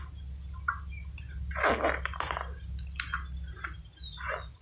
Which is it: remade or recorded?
recorded